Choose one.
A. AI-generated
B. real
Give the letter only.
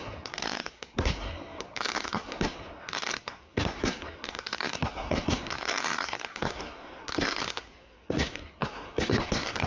A